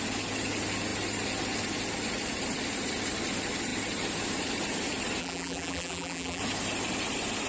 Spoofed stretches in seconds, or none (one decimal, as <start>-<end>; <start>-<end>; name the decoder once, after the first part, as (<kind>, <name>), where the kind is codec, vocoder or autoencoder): 5.2-6.4 (vocoder, BigVGAN v2)